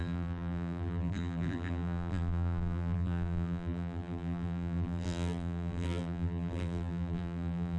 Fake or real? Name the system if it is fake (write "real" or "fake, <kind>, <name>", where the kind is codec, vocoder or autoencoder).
fake, vocoder, BigVGAN v2